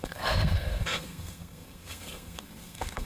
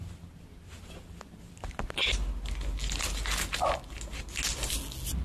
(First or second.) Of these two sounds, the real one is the second